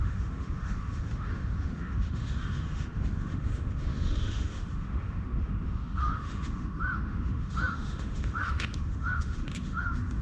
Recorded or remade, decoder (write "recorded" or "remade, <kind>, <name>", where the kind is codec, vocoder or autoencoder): remade, autoencoder, DAC-VAE